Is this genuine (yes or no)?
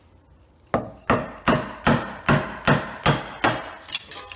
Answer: yes